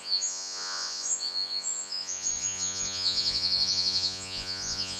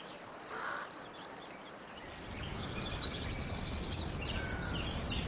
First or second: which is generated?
first